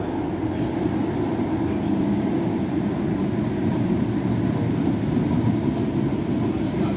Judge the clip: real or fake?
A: real